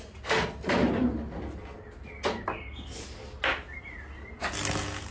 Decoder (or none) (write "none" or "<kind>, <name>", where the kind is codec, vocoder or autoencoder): none